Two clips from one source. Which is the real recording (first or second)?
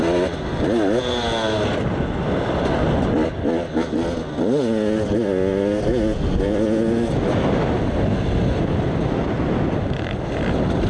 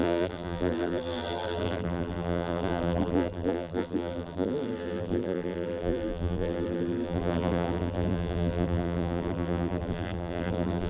first